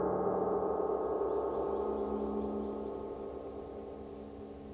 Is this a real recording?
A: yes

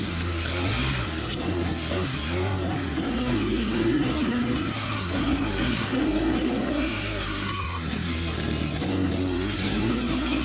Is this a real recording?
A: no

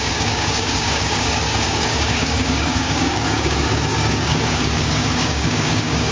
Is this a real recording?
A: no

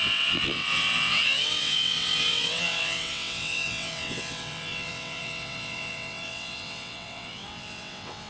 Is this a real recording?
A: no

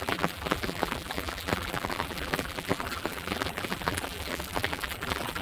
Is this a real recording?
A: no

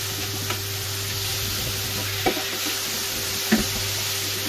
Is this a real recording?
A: yes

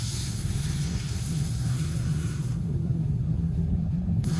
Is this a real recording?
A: no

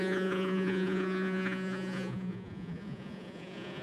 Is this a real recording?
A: no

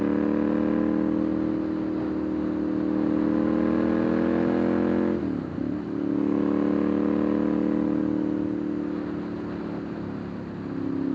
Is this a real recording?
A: yes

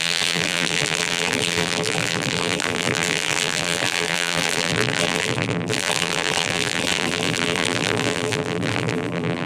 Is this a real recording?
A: no